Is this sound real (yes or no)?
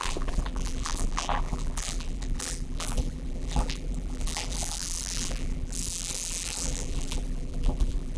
no